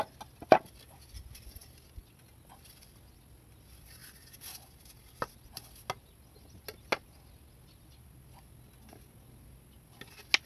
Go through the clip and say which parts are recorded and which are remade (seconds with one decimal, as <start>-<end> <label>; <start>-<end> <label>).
0.0-10.5 recorded

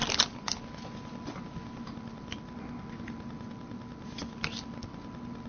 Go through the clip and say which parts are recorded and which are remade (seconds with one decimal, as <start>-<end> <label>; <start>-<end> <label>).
0.0-5.5 recorded

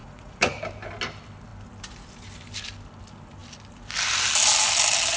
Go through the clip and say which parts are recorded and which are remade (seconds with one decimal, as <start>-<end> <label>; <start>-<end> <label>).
0.0-0.6 remade; 0.6-5.2 recorded

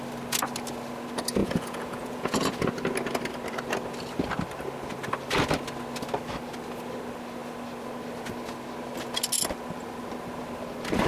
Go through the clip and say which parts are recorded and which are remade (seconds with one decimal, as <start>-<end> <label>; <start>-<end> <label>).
0.0-1.4 recorded; 1.4-2.5 remade; 2.5-11.1 recorded